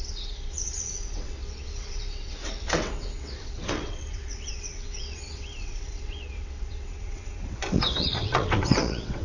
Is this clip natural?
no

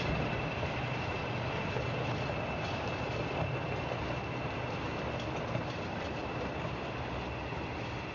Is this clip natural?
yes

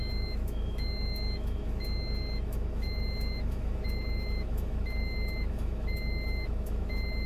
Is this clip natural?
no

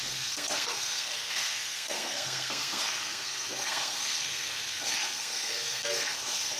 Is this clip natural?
no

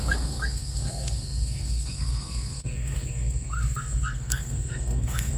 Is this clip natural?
no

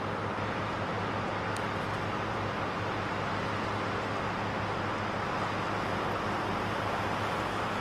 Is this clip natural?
yes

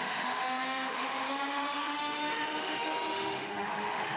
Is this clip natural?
no